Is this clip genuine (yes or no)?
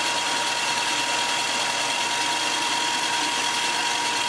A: yes